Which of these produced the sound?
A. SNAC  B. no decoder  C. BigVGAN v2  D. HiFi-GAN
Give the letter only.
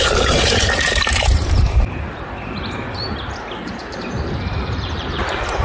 C